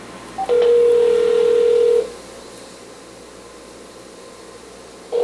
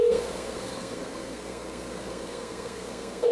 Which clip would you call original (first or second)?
first